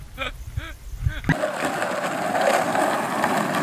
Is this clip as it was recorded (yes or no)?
yes